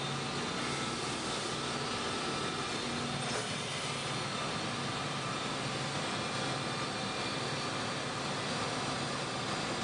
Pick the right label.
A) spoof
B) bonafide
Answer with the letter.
B